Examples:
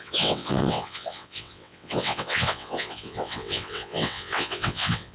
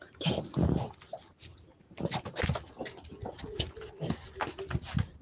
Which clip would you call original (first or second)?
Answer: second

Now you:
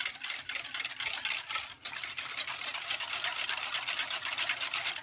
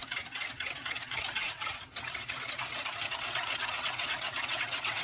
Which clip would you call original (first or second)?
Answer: first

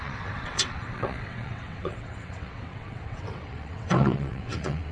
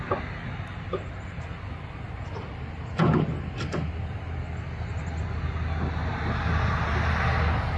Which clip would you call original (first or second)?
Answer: second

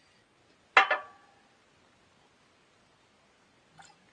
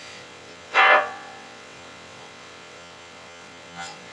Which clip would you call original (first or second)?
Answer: first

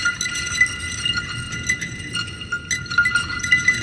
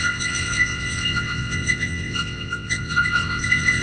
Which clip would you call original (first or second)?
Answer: first